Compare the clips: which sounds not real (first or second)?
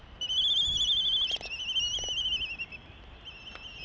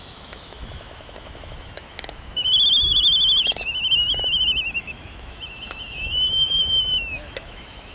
second